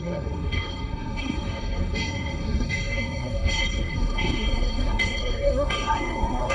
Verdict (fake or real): fake